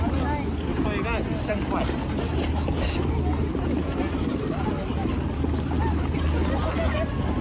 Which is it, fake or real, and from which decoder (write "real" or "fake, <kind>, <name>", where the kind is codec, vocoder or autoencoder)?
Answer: real